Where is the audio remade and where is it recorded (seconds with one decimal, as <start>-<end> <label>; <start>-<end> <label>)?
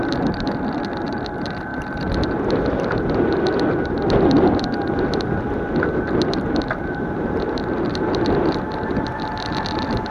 0.0-10.1 recorded